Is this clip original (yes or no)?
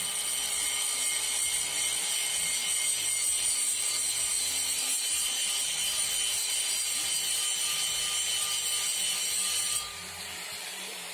yes